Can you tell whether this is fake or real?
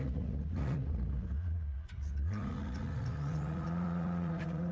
fake